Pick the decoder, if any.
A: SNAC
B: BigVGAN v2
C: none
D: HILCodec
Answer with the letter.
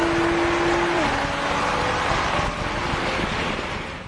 C